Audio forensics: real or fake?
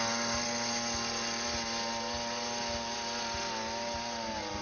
real